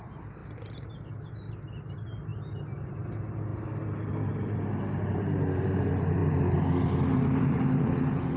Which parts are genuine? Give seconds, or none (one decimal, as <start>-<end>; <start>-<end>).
0.0-8.4